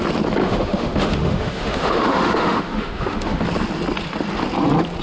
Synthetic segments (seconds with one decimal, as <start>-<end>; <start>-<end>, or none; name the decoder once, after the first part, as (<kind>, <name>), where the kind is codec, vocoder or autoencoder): 0.4-3.4 (autoencoder, DAC-VAE)